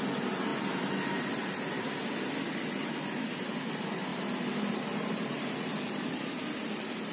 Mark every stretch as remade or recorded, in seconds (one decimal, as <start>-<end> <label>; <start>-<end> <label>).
0.0-4.1 recorded; 4.1-6.4 remade; 6.4-7.1 recorded